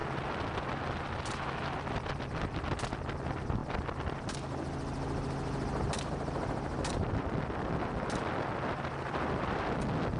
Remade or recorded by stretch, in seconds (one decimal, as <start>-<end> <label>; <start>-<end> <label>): 0.0-10.2 recorded